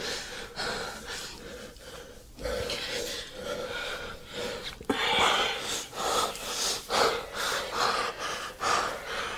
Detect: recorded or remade recorded